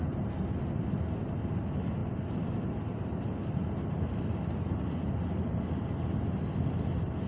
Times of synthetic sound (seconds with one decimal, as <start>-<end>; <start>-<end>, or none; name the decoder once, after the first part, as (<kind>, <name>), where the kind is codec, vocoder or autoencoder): none